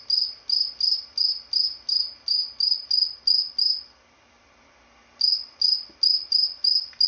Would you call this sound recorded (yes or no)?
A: yes